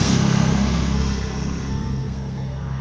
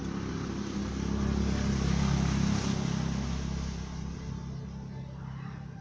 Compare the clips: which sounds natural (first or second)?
second